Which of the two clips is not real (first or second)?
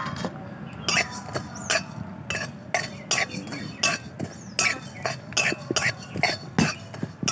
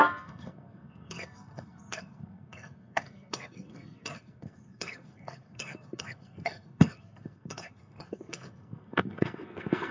second